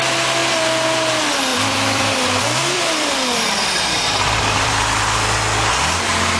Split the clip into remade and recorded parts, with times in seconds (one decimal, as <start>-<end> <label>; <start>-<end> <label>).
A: 0.0-1.5 recorded; 1.5-4.7 remade; 4.7-6.4 recorded